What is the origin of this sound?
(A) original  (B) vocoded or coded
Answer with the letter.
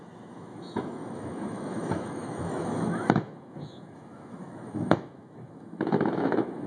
B